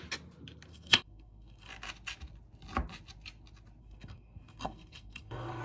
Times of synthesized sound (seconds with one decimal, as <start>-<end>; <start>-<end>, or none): 0.7-1.7; 3.8-5.6